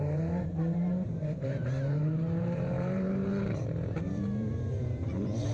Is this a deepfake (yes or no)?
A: yes